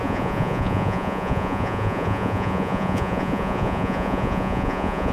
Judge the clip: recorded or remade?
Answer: remade